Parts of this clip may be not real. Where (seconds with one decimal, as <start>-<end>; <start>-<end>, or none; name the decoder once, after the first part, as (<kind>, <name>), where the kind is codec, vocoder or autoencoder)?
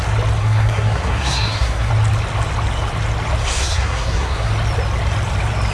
0.4-1.9 (codec, SNAC); 3.4-4.5